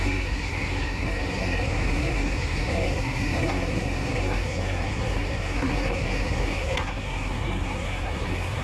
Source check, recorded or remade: remade